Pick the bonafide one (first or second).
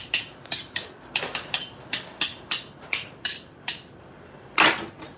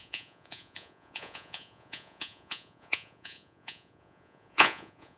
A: first